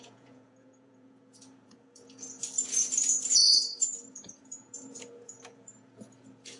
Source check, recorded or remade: remade